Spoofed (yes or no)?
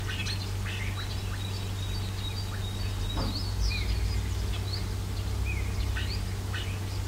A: no